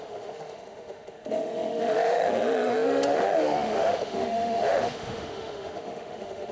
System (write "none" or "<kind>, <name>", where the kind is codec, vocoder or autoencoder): autoencoder, DAC-VAE